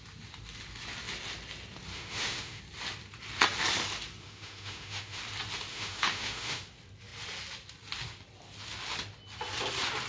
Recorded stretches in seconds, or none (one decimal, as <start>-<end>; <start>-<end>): 0.0-1.9; 2.6-4.2; 5.2-5.7; 6.6-10.1